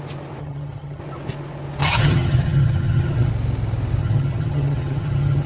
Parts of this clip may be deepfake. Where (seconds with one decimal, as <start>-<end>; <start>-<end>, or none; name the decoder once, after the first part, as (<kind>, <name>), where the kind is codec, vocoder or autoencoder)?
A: 0.4-1.0 (vocoder, HiFi-GAN); 1.8-3.3; 4.0-5.5